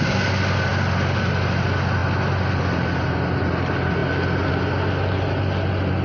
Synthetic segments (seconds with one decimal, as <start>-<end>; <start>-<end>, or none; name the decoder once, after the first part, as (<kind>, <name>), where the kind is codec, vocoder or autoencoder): none